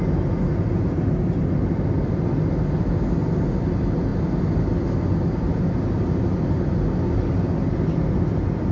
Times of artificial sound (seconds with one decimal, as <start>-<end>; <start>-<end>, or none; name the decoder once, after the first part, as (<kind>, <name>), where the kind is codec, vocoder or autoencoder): none